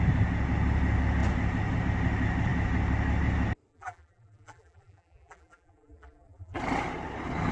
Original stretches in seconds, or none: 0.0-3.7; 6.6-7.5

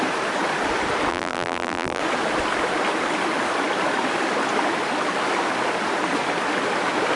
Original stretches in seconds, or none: 0.0-1.1; 2.0-7.2

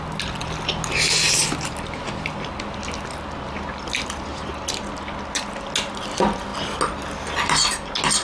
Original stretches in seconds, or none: 0.0-8.2